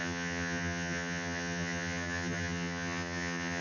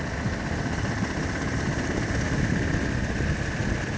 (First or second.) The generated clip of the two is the first